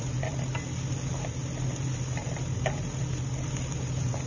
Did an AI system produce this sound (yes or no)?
no